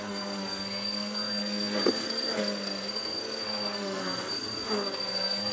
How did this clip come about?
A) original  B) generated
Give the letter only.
B